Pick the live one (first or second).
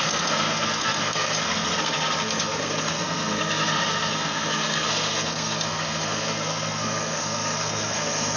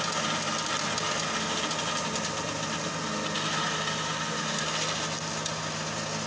second